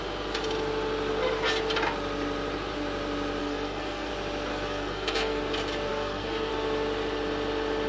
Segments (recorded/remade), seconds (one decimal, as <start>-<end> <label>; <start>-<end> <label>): 0.0-3.4 recorded; 3.4-4.1 remade; 4.1-4.5 recorded; 4.5-5.4 remade; 5.4-5.9 recorded; 5.9-6.5 remade; 6.5-7.9 recorded